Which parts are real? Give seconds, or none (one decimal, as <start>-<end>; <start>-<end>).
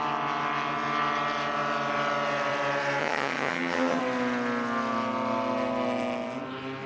0.0-3.0; 4.0-6.9